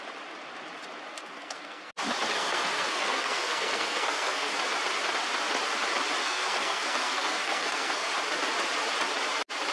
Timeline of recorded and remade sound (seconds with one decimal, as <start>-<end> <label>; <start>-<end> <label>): 0.0-1.1 recorded; 1.1-1.9 remade; 1.9-2.3 recorded; 2.3-4.5 remade; 4.5-6.2 recorded; 6.2-8.1 remade; 8.1-9.7 recorded